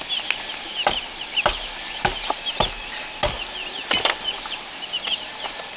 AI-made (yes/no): no